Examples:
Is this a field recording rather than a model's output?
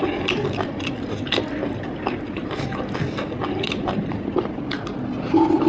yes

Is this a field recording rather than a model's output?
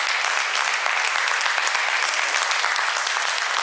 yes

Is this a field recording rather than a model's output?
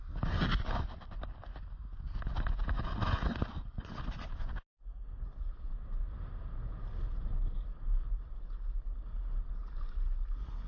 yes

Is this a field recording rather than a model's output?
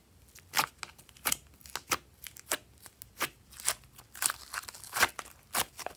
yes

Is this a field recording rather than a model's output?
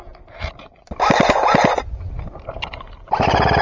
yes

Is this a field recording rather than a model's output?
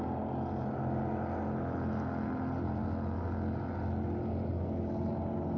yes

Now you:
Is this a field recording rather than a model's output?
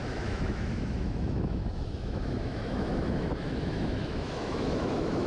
no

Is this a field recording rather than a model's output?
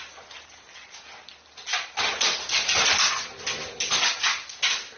yes